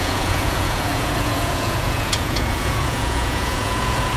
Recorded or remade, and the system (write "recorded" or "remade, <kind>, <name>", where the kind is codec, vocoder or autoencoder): remade, vocoder, Vocos